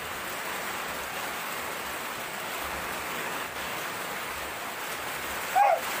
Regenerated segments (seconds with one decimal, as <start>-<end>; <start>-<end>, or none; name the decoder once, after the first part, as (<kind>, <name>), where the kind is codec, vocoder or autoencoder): 1.1-1.8 (codec, DAC); 2.3-4.4